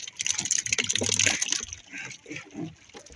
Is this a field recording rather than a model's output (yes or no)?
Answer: yes